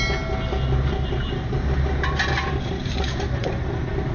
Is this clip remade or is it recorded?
recorded